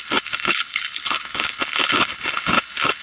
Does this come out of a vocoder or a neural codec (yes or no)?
yes